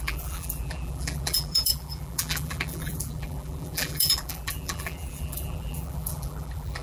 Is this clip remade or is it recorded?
remade